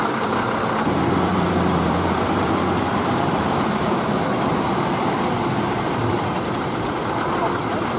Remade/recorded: remade